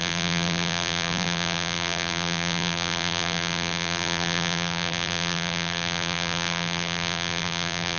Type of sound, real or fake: fake